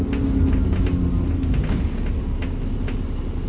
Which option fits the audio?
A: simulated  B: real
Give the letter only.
B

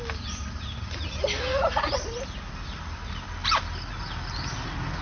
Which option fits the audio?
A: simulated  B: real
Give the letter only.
B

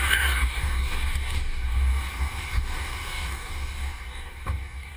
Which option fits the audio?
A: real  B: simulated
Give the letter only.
B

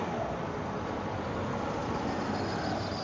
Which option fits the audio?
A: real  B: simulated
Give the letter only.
A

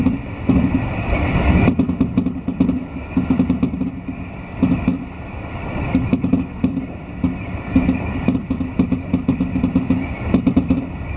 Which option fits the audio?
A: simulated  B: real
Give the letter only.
B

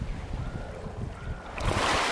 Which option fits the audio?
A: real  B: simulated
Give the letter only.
A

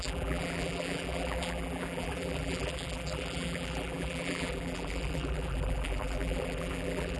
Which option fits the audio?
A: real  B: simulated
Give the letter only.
B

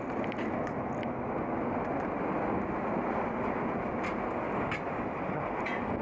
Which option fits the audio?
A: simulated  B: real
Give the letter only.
B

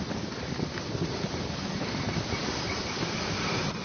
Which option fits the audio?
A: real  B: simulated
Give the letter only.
A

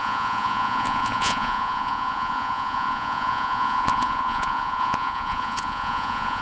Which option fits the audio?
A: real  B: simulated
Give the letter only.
B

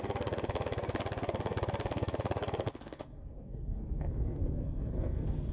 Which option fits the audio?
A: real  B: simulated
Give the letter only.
B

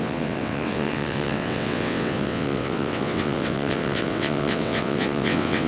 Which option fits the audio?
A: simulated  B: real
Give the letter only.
A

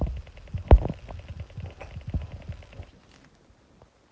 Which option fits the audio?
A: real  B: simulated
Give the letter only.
A